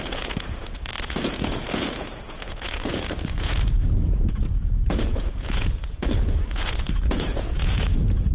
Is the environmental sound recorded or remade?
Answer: remade